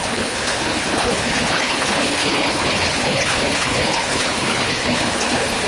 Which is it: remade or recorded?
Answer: remade